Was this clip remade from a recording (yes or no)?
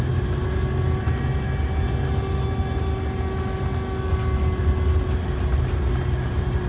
no